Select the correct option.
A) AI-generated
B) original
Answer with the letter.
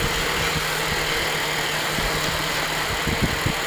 B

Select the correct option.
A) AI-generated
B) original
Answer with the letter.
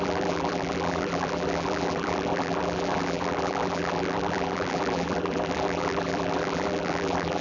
A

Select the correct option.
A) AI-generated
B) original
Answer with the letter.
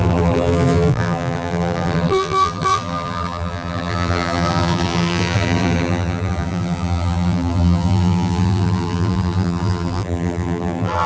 A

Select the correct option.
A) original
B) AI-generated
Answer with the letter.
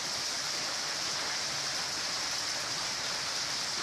B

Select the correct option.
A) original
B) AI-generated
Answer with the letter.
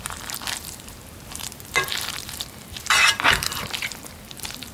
B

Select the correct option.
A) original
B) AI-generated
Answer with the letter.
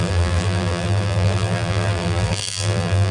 B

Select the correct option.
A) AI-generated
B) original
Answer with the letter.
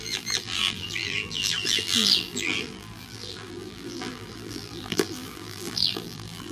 A